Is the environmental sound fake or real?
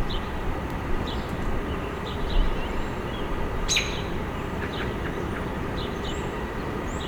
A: fake